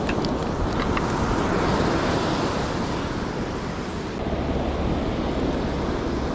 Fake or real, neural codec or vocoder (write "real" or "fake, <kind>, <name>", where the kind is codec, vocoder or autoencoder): real